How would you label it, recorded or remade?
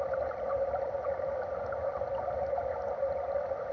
recorded